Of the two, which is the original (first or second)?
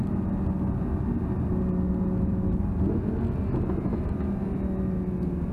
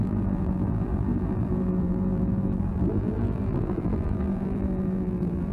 first